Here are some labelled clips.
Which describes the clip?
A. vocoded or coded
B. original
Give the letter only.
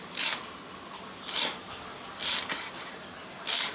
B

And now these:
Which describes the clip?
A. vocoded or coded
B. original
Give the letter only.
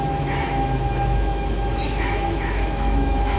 A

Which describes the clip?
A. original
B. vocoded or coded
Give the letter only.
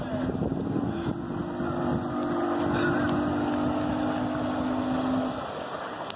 A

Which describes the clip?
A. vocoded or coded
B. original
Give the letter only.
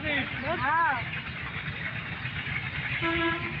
B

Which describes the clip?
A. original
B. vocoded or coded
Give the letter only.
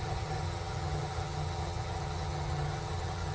B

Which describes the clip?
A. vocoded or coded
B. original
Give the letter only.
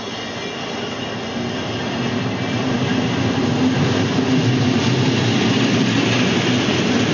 B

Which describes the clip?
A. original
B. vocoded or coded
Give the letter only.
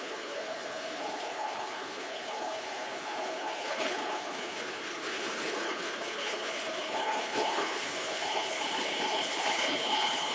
B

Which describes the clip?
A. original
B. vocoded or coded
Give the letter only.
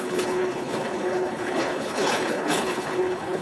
B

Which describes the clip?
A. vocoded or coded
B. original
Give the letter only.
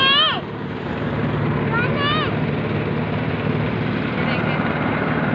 B